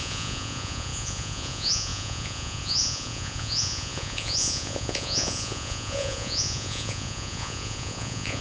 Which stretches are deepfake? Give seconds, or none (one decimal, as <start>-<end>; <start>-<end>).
0.0-8.4